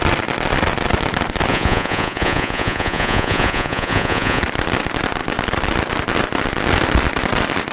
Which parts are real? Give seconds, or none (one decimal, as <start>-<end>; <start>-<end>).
0.0-1.5; 4.4-7.7